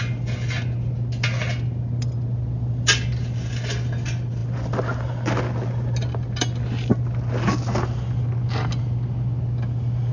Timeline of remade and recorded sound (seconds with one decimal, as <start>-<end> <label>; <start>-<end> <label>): 0.0-10.1 recorded